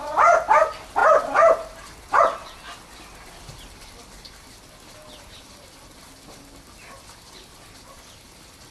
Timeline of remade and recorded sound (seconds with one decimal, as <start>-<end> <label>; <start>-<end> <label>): 0.0-8.7 recorded